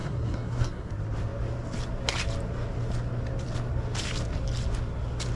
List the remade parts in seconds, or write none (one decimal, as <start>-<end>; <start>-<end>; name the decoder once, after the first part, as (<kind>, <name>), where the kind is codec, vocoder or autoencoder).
0.0-0.9 (codec, SNAC)